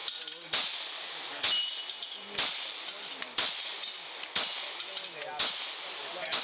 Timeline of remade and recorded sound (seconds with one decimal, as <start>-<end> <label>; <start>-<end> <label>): 0.0-3.2 recorded; 3.2-3.7 remade; 3.7-6.0 recorded; 6.0-6.4 remade